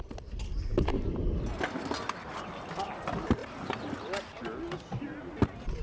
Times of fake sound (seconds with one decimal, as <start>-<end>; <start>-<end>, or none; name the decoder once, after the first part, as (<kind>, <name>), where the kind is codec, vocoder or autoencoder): none